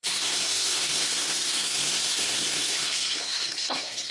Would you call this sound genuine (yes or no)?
no